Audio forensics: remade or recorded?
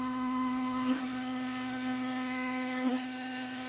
remade